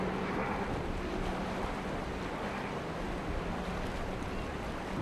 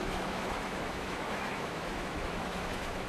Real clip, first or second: first